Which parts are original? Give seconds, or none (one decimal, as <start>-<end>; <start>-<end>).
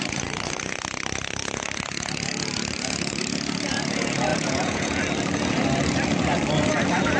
0.0-4.3; 5.0-7.2